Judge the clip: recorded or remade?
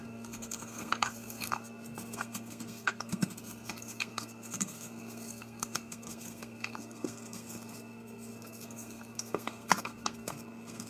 remade